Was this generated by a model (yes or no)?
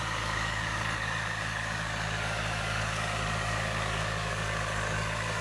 yes